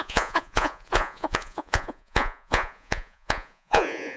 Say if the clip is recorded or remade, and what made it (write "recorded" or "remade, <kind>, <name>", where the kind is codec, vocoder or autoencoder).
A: remade, vocoder, Vocos